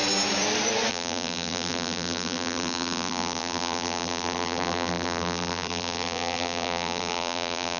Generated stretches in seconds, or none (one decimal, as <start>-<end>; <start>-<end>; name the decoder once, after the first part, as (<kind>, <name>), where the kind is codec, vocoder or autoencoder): 0.9-7.8 (vocoder, BigVGAN v2)